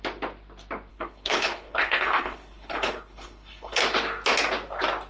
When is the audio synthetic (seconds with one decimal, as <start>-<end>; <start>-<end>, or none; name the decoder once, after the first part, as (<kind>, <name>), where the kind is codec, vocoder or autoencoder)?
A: 0.9-3.8 (codec, HILCodec)